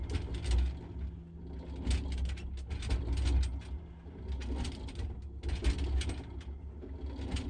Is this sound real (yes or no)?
yes